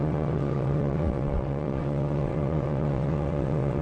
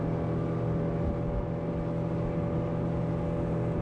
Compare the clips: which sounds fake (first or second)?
first